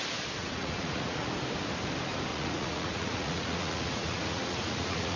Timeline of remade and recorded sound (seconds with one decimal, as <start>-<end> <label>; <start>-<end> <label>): 0.0-0.4 recorded; 0.4-1.3 remade; 1.3-2.3 recorded; 2.3-5.2 remade